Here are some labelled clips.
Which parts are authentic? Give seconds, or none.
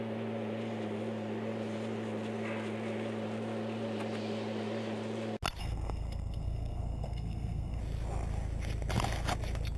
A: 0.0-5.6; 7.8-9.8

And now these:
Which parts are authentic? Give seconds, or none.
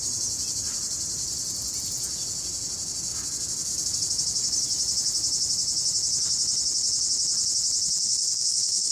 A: 0.0-8.0